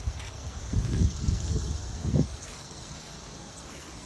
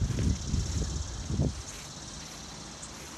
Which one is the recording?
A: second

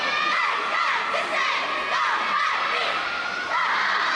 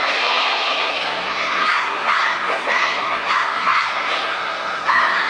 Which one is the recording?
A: first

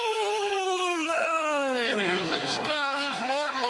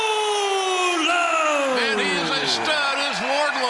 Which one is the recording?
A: second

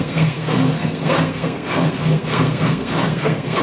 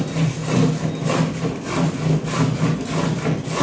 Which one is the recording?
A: second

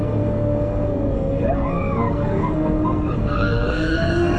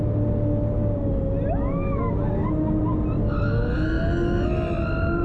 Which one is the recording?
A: second